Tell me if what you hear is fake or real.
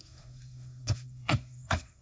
fake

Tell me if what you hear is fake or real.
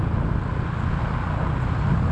real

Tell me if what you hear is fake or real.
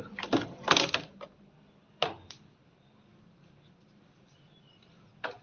real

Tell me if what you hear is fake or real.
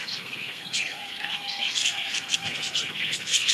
fake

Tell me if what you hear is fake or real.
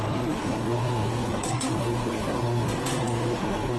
fake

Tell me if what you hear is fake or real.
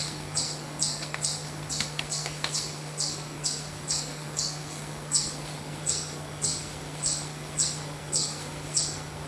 fake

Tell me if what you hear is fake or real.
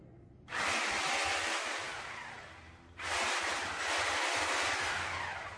real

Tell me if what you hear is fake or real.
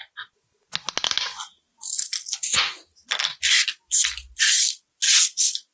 real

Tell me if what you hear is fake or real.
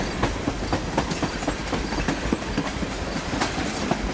real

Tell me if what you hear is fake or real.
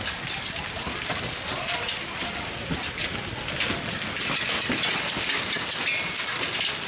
real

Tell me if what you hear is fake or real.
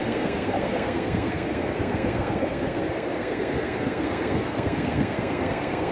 fake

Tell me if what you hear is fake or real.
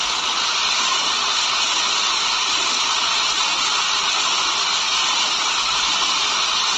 real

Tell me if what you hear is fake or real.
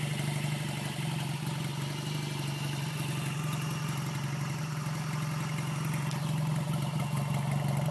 real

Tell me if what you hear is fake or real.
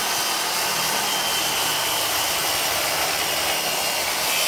real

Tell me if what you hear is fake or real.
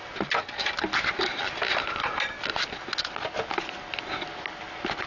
real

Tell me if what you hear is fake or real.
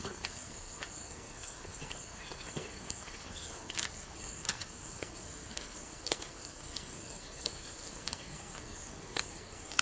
fake